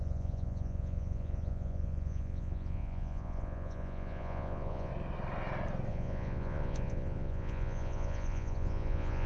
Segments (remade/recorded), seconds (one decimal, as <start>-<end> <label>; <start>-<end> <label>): 0.0-4.9 remade; 4.9-5.9 recorded; 5.9-9.3 remade